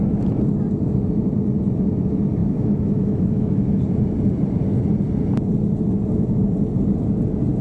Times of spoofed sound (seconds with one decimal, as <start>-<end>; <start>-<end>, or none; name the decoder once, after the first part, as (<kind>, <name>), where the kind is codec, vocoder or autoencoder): 2.4-3.8 (autoencoder, DAC-VAE)